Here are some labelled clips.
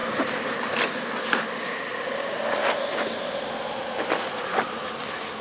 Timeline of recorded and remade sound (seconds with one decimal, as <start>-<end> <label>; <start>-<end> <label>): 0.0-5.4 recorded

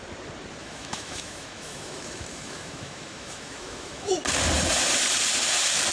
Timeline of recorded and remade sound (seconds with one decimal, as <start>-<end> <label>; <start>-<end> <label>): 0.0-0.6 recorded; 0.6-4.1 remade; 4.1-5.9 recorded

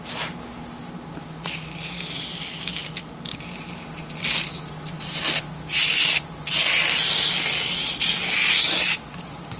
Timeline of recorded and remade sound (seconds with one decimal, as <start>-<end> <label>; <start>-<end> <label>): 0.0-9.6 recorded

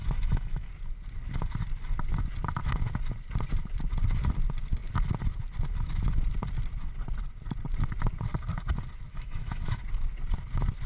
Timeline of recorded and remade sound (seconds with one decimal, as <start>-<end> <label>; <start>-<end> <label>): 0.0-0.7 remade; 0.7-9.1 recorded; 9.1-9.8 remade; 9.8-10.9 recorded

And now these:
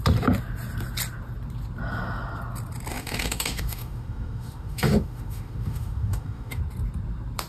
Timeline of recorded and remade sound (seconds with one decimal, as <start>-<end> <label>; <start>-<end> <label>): 0.0-2.9 recorded; 2.9-6.6 remade; 6.6-7.5 recorded

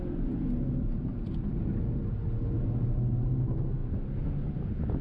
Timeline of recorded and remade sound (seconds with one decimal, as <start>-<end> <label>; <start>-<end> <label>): 0.0-5.0 recorded

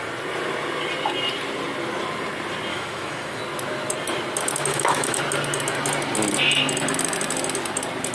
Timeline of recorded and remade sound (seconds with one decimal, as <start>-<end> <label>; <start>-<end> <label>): 0.0-2.7 recorded; 2.7-3.4 remade; 3.4-4.7 recorded; 4.7-5.2 remade; 5.2-8.1 recorded